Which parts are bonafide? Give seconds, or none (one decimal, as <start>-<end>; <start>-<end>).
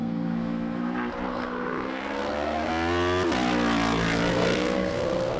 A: 0.8-1.3; 2.7-4.3